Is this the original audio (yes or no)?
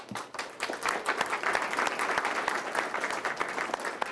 yes